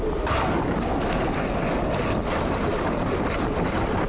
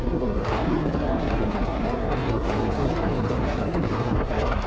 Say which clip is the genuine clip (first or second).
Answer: first